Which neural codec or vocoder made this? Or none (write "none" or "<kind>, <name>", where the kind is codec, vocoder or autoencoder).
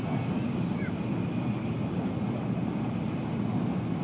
none